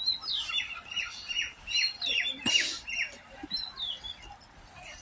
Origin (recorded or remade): recorded